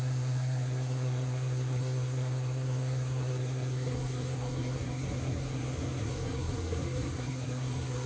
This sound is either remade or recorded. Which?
remade